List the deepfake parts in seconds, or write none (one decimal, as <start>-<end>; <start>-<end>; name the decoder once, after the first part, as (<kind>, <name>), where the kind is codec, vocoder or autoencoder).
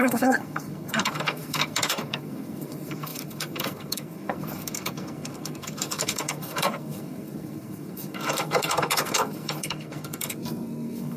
0.0-11.2 (codec, SNAC)